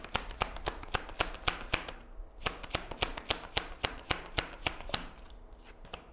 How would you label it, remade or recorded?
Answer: recorded